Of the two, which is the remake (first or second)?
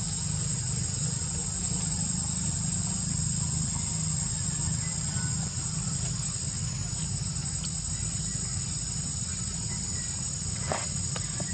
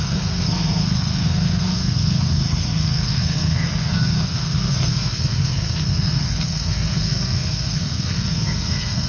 second